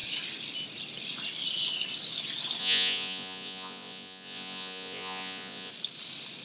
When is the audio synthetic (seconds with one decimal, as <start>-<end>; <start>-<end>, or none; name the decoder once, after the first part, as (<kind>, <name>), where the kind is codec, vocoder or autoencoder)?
2.6-5.7 (vocoder, Vocos)